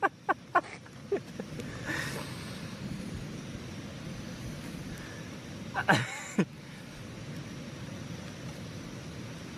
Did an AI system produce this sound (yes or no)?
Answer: no